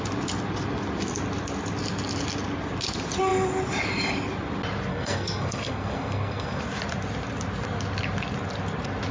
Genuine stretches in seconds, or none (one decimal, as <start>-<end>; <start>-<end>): 0.0-4.9; 6.6-9.1